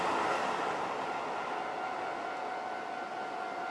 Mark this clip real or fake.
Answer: real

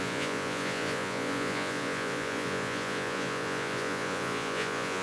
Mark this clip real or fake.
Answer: fake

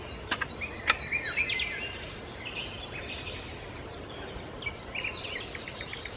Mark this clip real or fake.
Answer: real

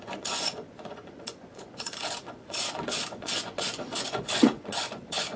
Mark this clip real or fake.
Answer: fake